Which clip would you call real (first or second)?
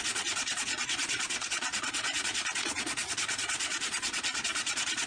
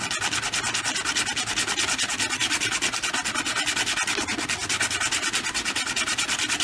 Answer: second